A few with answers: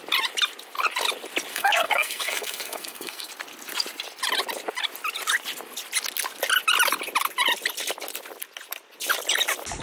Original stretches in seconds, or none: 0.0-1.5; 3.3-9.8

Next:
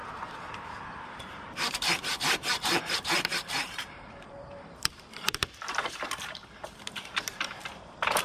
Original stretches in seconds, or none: none

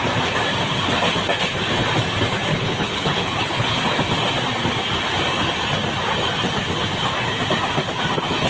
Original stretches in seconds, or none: 0.0-2.5; 3.8-8.5

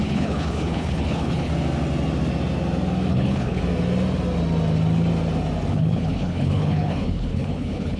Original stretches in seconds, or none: 1.5-3.1; 3.6-5.7

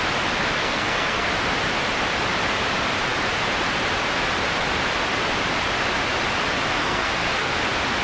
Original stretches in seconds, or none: 0.0-0.6; 1.3-6.8; 7.6-8.0

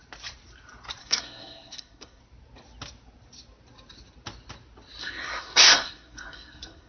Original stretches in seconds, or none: 0.0-1.0; 2.2-5.0

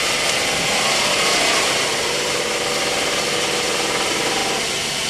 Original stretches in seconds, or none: 0.0-5.1